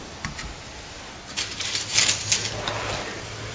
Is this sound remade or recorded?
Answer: recorded